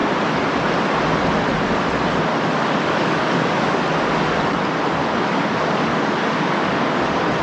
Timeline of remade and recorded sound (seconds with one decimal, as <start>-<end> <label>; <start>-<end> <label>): 0.0-2.3 recorded; 2.3-3.8 remade; 3.8-5.0 recorded; 5.0-7.0 remade; 7.0-7.4 recorded